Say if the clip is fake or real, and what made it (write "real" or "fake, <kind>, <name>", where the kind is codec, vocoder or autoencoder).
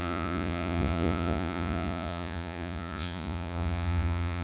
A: fake, vocoder, Vocos